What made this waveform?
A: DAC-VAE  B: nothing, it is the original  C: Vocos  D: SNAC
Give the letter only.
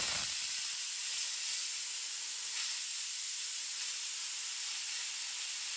B